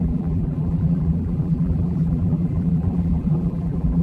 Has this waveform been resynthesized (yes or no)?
yes